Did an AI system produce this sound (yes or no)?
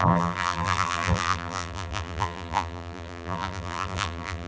yes